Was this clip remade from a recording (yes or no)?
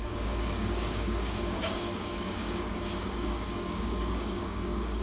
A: yes